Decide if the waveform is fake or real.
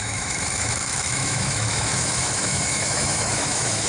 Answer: fake